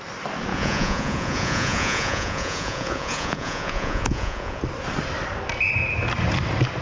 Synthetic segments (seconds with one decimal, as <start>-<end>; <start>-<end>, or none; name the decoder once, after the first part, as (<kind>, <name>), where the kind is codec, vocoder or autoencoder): 0.5-4.6 (vocoder, Vocos)